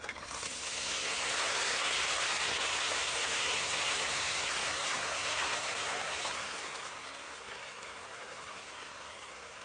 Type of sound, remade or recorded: remade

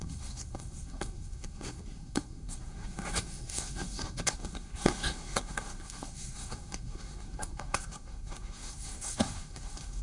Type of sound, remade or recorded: remade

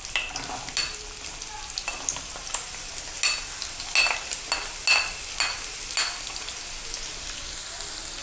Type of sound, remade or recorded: recorded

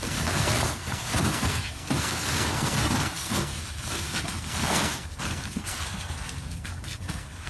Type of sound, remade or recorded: remade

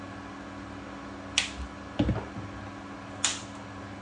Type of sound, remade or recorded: recorded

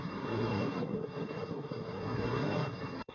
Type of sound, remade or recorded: remade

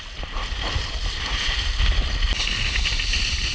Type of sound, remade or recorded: recorded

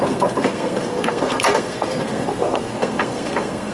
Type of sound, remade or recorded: remade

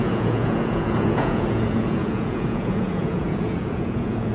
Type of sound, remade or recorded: remade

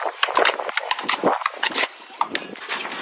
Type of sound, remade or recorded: recorded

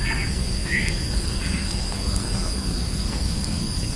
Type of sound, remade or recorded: remade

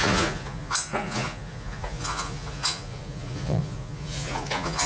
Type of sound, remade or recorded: remade